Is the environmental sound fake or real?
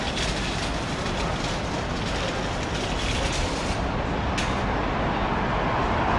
real